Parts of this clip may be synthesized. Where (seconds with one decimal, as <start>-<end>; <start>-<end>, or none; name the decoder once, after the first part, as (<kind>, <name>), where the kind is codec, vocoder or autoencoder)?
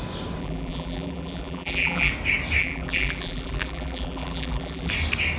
0.4-2.1 (vocoder, BigVGAN v2); 2.6-4.9